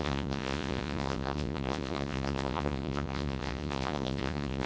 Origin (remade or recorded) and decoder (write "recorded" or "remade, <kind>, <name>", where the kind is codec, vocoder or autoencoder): remade, vocoder, Vocos